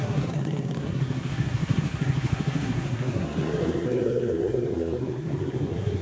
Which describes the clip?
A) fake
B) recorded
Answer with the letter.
A